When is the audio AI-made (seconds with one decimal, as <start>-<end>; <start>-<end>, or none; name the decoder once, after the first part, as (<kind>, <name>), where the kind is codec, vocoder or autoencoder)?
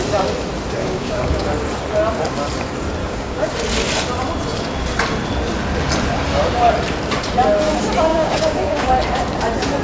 0.8-1.5 (codec, DAC); 3.0-3.5; 8.1-8.9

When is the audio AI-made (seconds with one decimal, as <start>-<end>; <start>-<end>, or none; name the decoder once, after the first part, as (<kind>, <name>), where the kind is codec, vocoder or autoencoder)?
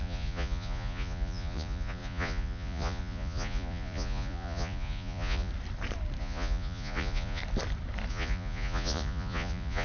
0.0-5.5 (vocoder, Vocos); 6.2-7.4; 8.1-9.8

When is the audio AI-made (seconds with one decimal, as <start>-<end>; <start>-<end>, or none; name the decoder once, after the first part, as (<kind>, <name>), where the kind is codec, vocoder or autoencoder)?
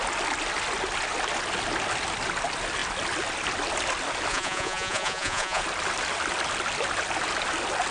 4.3-5.6 (vocoder, Vocos)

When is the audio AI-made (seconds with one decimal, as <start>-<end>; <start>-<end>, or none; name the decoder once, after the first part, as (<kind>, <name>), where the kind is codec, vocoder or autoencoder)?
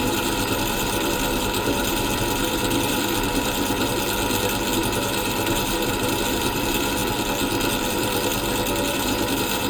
0.0-3.9 (vocoder, BigVGAN v2); 4.8-7.0; 7.9-8.3; 8.9-9.7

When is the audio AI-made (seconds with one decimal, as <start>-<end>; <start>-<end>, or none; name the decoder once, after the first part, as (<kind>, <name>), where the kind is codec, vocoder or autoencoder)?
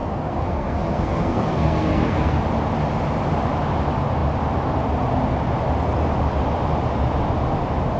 0.0-2.4 (codec, SNAC)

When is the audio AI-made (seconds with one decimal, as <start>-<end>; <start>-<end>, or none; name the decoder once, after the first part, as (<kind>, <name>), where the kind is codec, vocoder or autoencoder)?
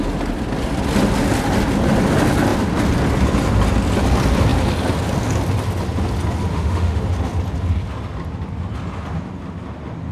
6.5-7.0 (autoencoder, DAC-VAE)